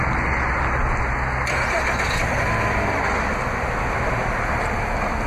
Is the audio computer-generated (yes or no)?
no